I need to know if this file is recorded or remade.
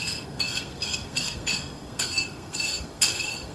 remade